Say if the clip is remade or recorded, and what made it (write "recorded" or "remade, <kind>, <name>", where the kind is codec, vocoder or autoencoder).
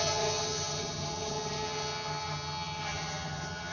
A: remade, vocoder, HiFi-GAN